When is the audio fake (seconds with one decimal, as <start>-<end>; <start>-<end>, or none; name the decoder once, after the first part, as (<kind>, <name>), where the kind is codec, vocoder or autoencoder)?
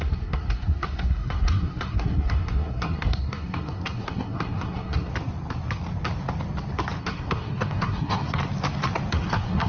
0.0-5.1 (codec, SNAC); 7.0-8.4; 9.1-9.7